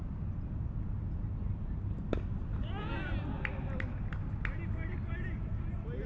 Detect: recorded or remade recorded